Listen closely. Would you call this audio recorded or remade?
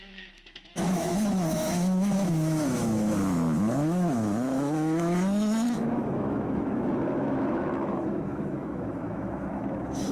remade